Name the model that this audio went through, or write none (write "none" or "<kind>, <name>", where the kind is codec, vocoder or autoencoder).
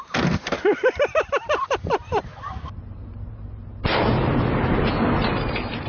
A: vocoder, BigVGAN v2